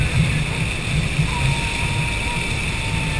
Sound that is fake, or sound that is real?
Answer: real